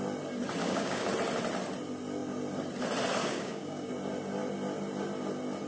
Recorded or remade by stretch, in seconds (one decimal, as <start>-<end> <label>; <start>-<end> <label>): 0.0-0.6 recorded; 0.6-1.1 remade; 1.1-3.2 recorded; 3.2-3.9 remade; 3.9-5.7 recorded